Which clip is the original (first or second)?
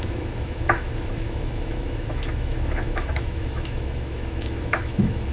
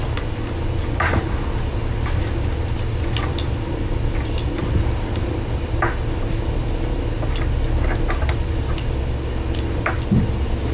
second